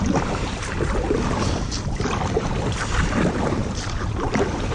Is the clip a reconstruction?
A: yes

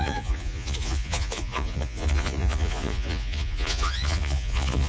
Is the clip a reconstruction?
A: yes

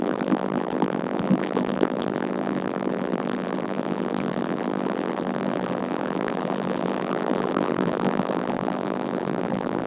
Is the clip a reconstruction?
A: yes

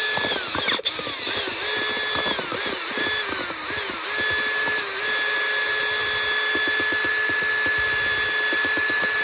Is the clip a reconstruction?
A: no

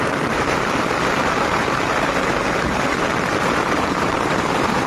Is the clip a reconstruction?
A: yes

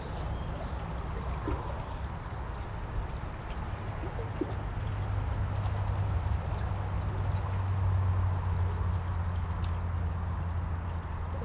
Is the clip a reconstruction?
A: no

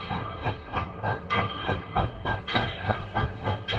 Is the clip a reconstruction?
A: yes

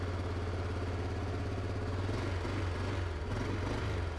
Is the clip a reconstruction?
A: no